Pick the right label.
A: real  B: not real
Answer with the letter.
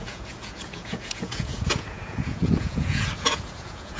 B